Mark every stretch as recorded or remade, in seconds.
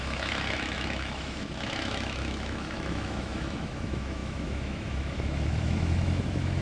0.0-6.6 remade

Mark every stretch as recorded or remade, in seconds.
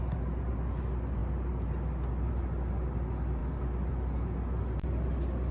0.0-5.5 recorded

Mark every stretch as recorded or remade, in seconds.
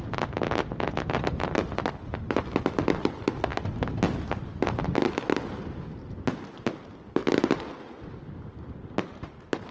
0.0-9.7 recorded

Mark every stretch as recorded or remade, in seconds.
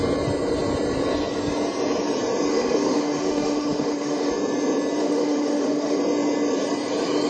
0.0-2.5 recorded; 2.5-4.3 remade; 4.3-5.0 recorded; 5.0-6.0 remade; 6.0-7.3 recorded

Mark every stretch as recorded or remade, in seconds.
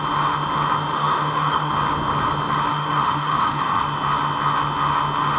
0.0-0.9 recorded; 0.9-1.7 remade; 1.7-2.7 recorded; 2.7-3.8 remade; 3.8-5.4 recorded